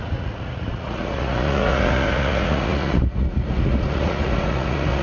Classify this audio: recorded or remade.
remade